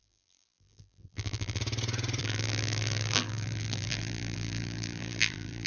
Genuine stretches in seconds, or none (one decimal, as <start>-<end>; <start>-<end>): 1.6-2.2